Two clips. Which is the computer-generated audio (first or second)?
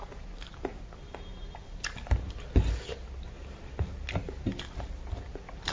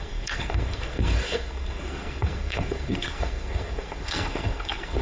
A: second